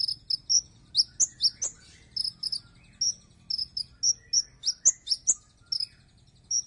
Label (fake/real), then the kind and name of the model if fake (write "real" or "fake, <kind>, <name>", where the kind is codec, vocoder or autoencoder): real